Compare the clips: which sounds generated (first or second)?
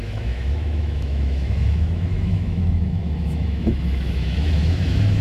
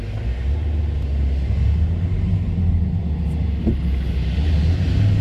first